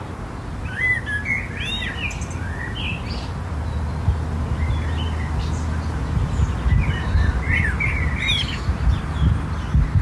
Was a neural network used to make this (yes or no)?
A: no